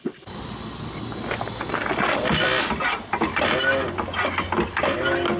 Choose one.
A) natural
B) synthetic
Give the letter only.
A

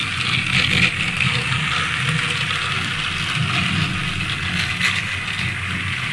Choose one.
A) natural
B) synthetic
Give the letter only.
A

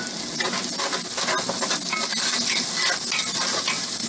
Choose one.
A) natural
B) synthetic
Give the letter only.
A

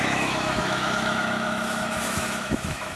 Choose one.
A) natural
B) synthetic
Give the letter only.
B